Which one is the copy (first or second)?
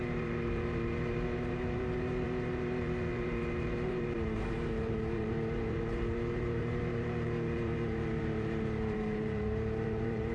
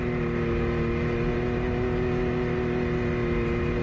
first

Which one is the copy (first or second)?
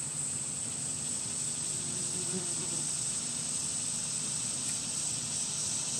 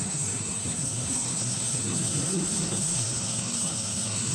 second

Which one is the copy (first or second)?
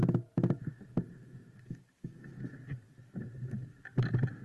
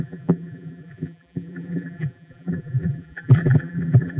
second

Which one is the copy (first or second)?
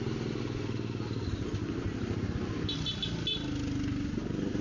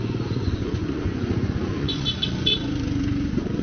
second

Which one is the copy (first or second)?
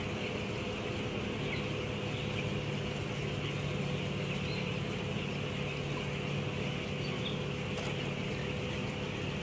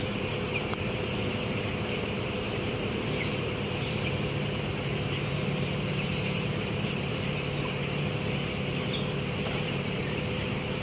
second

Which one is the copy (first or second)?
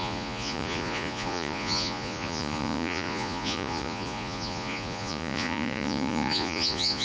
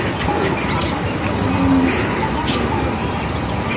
first